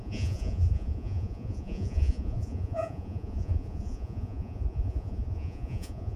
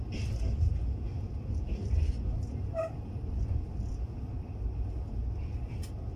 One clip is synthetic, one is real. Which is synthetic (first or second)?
first